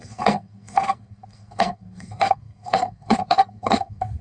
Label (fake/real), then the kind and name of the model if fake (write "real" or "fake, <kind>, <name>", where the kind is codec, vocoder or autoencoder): fake, codec, SNAC